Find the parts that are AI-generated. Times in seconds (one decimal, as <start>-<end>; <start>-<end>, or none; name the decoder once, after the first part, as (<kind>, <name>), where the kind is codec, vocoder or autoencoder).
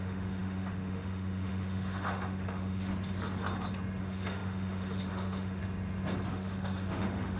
0.0-2.9 (autoencoder, DAC-VAE); 4.0-5.6; 6.3-7.4